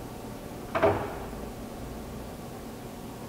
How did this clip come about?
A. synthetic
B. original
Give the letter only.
B